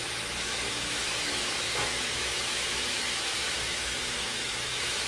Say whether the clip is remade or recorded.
remade